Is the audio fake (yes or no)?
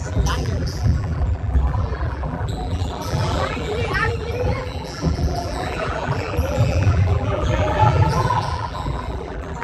yes